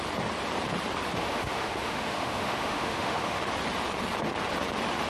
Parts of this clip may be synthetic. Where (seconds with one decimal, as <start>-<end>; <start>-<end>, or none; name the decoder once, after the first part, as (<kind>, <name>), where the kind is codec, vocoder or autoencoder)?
1.2-3.4 (autoencoder, DAC-VAE)